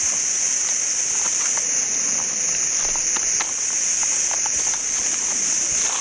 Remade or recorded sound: recorded